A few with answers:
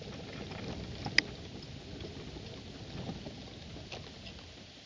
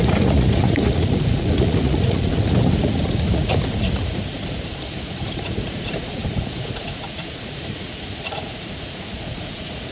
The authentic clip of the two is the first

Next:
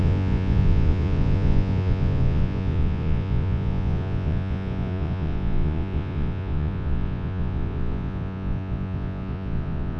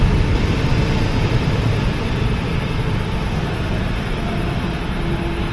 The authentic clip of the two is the second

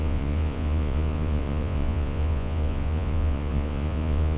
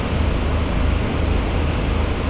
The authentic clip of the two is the second